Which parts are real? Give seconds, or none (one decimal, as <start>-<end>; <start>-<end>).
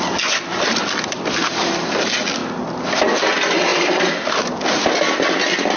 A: 0.0-3.7; 4.2-5.8